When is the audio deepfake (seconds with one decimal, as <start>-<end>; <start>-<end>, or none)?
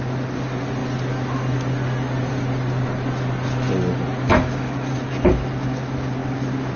4.3-4.9